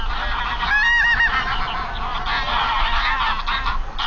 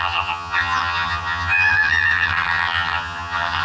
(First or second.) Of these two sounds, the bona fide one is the first